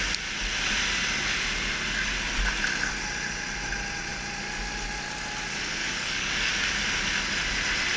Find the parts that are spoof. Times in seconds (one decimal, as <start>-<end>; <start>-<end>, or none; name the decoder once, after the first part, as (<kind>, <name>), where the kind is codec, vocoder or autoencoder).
5.8-6.5 (codec, DAC)